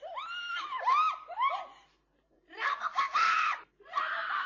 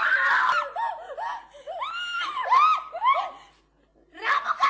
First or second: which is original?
second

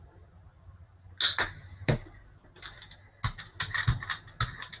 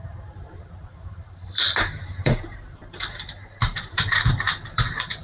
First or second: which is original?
first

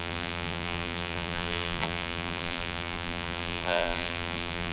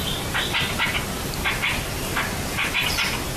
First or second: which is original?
second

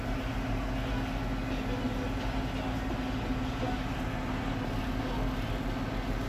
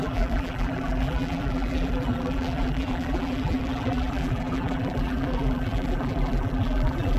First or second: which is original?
first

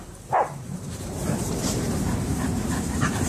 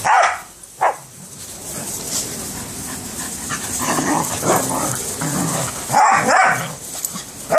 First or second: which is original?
second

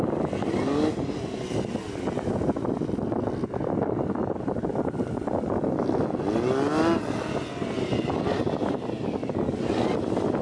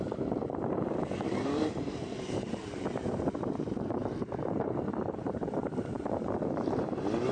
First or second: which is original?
first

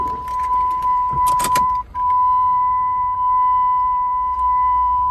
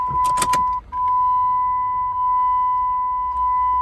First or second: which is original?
second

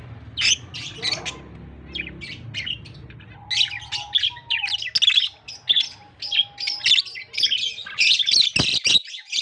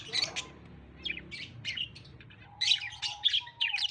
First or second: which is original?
first